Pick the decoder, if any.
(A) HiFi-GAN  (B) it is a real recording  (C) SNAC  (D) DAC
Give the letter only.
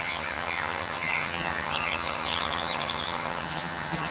A